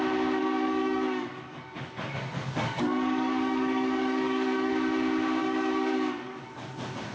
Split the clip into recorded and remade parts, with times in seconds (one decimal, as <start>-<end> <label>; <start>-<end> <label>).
0.0-0.4 recorded; 0.4-4.7 remade; 4.7-5.4 recorded; 5.4-6.5 remade; 6.5-7.1 recorded